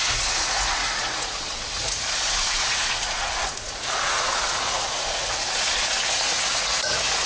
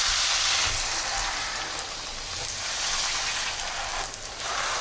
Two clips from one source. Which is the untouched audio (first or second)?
second